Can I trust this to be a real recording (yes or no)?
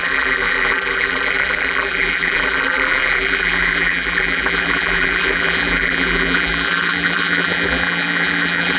no